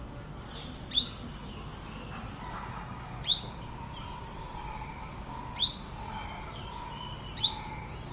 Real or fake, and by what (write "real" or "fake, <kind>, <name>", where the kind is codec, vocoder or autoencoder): fake, vocoder, BigVGAN v2